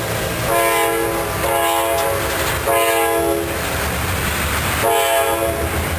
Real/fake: real